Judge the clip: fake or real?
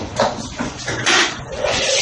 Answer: fake